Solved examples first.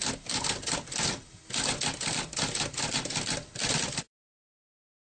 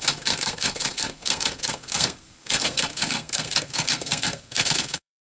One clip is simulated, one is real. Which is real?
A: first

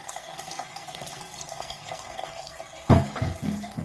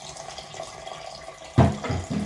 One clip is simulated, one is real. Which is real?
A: second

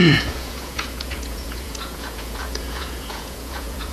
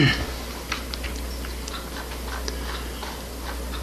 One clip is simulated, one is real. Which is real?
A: second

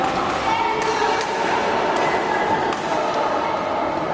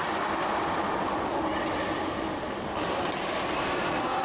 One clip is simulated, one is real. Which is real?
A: first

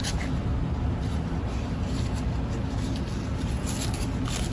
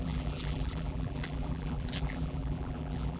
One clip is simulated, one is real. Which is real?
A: first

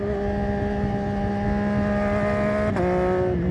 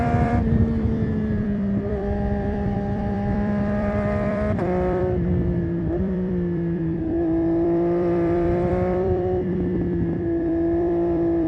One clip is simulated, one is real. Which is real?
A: first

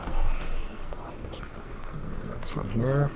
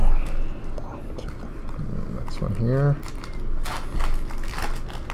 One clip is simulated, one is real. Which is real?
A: second